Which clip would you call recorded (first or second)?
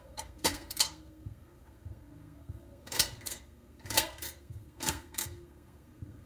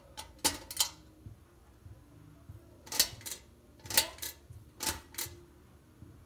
second